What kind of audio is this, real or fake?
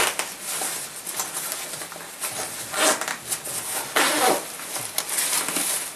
real